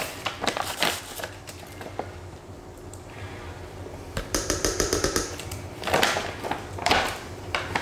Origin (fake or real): fake